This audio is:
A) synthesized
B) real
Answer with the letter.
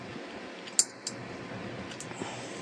B